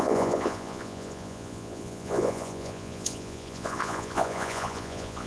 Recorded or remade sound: remade